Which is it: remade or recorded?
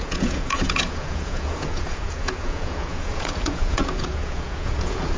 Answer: remade